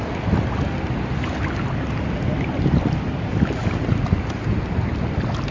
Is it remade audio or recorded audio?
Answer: recorded